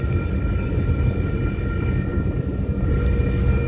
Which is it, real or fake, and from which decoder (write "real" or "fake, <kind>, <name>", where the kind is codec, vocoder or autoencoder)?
real